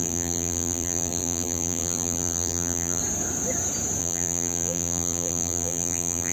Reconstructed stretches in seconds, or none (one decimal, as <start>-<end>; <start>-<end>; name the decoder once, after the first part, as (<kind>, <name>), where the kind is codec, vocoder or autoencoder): 0.0-3.0 (vocoder, BigVGAN v2); 4.0-6.3